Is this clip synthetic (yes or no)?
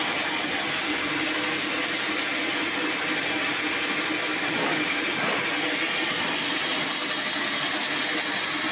no